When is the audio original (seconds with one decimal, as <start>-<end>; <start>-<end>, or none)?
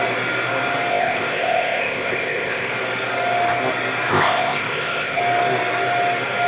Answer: 0.0-0.9; 2.7-4.1; 5.2-6.5